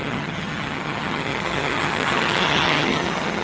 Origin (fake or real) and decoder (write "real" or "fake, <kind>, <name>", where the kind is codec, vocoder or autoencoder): fake, vocoder, HiFi-GAN